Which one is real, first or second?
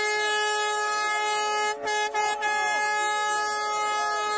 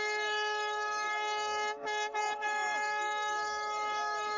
first